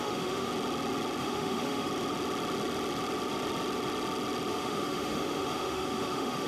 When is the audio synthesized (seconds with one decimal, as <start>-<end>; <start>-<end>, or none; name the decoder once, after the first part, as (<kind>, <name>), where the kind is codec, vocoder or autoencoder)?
0.0-0.5 (autoencoder, DAC-VAE); 1.2-1.9; 4.5-6.5